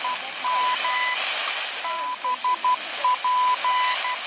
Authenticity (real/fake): real